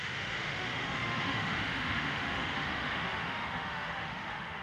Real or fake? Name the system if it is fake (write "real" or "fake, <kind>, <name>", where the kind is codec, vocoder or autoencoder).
fake, autoencoder, DAC-VAE